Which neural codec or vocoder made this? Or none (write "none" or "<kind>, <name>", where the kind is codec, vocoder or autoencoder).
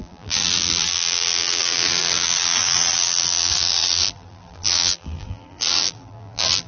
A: vocoder, BigVGAN v2